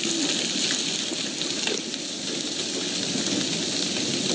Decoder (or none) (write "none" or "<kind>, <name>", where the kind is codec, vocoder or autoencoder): none